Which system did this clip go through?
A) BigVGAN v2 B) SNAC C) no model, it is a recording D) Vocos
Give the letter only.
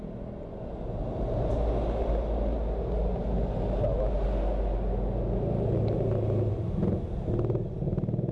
C